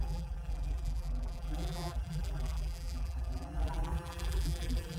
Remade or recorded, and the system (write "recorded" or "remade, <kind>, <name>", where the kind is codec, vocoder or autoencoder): remade, vocoder, BigVGAN v2